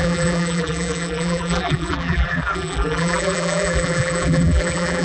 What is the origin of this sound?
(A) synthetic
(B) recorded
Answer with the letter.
A